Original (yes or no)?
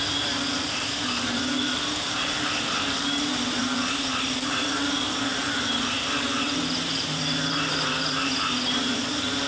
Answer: no